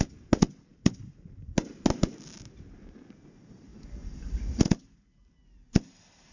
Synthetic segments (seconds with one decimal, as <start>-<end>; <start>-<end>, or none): none